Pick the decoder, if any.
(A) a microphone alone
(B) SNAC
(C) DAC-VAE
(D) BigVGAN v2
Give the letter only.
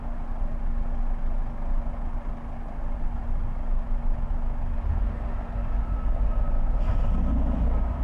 A